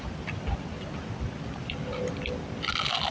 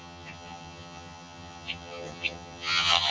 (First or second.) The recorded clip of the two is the first